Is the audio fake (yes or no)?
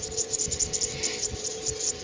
no